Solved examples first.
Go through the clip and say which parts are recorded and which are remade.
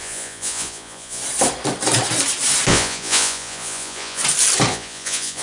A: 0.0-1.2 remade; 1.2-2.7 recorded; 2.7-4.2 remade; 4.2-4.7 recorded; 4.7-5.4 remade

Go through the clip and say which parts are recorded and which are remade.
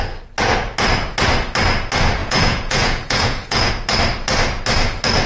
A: 0.0-2.2 recorded; 2.2-3.7 remade; 3.7-5.3 recorded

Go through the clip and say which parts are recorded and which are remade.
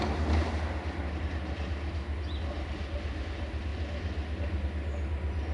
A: 0.0-5.5 recorded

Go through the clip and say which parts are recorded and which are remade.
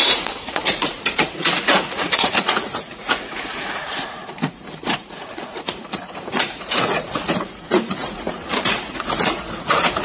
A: 0.0-10.0 remade